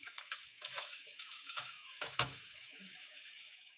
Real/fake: fake